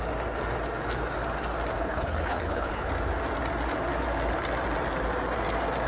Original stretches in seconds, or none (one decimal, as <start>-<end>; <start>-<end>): 0.0-1.8; 2.9-5.9